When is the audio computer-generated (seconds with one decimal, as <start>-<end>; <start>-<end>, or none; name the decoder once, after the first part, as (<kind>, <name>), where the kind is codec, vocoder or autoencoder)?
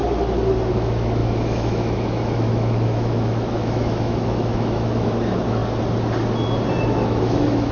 0.7-5.6 (autoencoder, DAC-VAE); 6.8-7.7